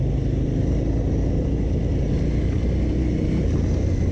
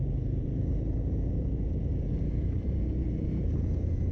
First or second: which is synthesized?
second